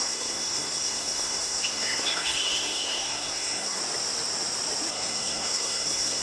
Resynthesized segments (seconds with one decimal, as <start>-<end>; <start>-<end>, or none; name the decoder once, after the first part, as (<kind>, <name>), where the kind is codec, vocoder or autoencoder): 0.0-3.8 (codec, SNAC); 4.9-6.2